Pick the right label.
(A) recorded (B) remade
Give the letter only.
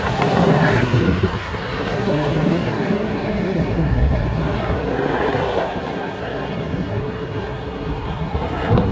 B